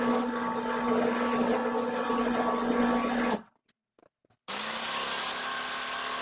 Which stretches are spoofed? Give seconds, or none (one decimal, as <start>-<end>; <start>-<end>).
none